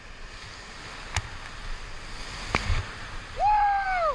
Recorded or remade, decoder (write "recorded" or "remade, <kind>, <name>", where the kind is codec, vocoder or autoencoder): recorded